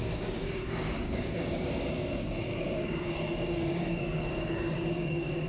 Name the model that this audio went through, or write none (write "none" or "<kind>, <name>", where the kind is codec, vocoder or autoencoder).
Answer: codec, DAC